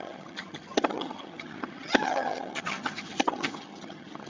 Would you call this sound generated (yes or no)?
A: yes